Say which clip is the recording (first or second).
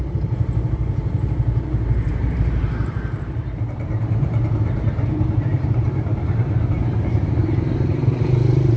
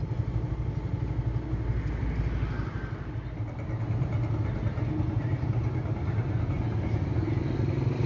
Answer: second